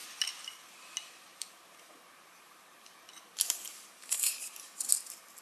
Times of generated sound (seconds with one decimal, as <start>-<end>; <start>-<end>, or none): 1.3-4.5

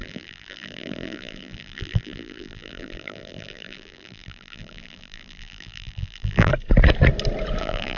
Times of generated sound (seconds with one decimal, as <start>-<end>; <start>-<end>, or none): 0.0-6.5; 7.6-8.0

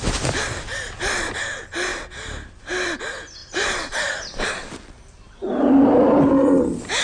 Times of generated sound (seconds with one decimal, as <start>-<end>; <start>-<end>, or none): 3.4-5.5

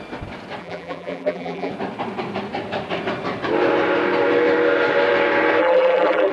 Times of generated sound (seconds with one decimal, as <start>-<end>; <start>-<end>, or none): 0.6-1.7; 5.6-6.3

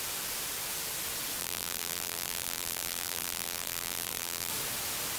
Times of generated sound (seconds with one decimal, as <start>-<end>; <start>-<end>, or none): 1.4-4.5

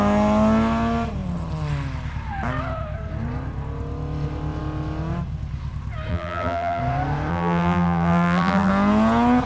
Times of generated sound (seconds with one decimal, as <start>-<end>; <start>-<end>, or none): 6.1-6.8; 7.3-8.7

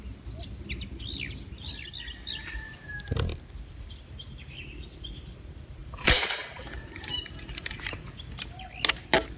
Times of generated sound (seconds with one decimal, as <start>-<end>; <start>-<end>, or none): 5.8-8.1

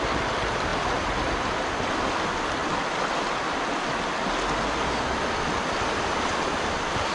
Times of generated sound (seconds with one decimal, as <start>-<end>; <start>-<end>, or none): none